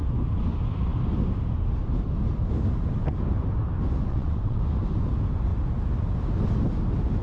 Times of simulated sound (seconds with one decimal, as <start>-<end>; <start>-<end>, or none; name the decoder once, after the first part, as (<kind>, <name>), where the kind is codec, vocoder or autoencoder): 4.1-4.6 (vocoder, WaveNeXt)